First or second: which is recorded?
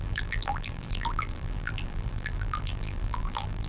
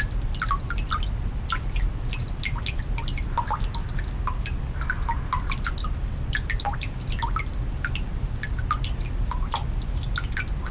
second